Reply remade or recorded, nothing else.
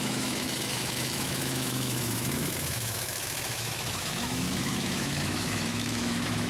remade